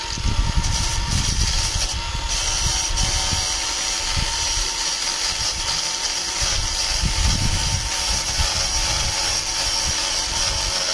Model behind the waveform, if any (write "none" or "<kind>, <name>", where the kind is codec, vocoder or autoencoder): none